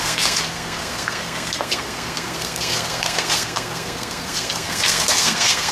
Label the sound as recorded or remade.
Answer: remade